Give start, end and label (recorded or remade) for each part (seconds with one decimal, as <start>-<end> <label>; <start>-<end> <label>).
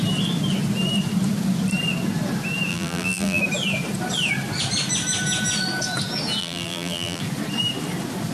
0.0-2.7 recorded; 2.7-3.4 remade; 3.4-6.4 recorded; 6.4-7.2 remade; 7.2-8.3 recorded